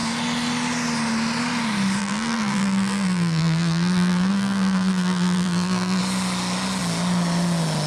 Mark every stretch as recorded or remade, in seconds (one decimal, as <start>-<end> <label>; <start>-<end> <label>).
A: 0.0-2.0 recorded; 2.0-6.0 remade; 6.0-7.9 recorded